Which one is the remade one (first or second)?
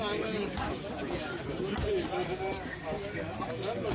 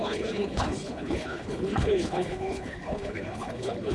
second